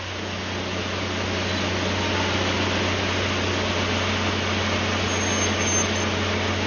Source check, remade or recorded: recorded